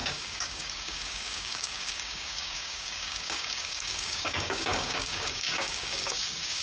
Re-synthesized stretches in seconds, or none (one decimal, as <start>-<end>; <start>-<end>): 0.0-6.6